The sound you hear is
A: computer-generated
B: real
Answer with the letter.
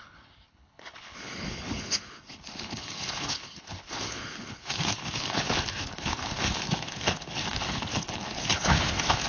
A